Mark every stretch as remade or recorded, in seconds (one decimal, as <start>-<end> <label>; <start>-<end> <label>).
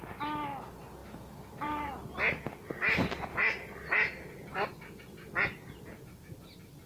0.0-1.0 recorded; 1.0-1.9 remade; 1.9-6.9 recorded